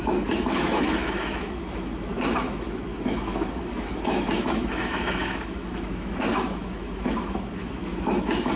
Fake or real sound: fake